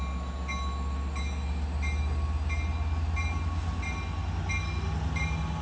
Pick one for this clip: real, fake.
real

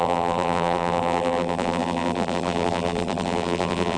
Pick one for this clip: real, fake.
fake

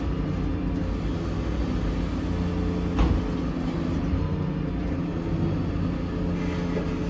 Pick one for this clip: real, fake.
real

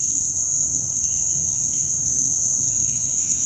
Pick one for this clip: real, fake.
fake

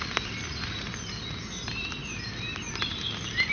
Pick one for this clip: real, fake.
real